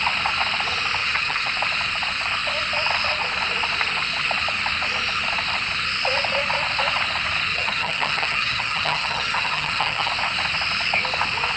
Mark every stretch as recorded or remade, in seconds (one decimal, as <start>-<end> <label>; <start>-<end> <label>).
0.0-1.0 recorded; 1.0-1.5 remade; 1.5-7.5 recorded; 7.5-10.1 remade; 10.1-11.6 recorded